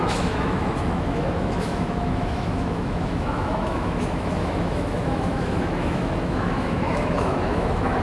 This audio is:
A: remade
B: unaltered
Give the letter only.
A